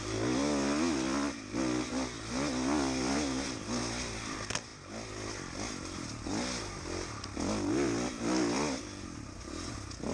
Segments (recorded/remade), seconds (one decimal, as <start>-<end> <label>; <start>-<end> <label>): 0.0-10.1 recorded